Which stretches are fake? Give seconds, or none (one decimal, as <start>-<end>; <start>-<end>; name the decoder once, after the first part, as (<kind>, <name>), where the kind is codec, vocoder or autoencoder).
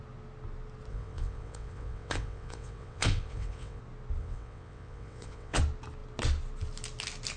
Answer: 0.9-3.8 (vocoder, WaveNeXt); 4.2-5.6